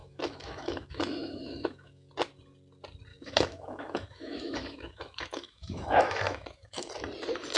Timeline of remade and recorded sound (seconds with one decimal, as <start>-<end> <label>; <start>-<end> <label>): 0.0-2.1 remade; 2.1-3.1 recorded; 3.1-6.9 remade; 6.9-7.6 recorded